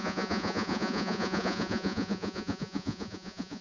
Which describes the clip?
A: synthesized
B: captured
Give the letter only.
A